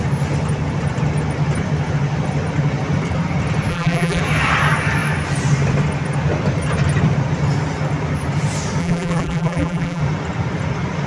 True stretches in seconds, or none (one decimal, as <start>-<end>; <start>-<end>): 0.0-3.7; 4.2-8.8; 10.0-11.1